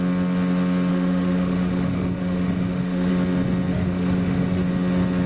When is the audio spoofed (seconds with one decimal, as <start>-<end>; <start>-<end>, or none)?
0.9-3.1; 3.7-4.6